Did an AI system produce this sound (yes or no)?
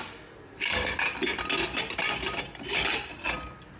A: no